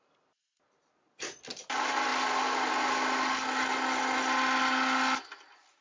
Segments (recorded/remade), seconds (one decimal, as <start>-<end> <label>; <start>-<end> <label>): 0.0-2.1 remade; 2.1-5.8 recorded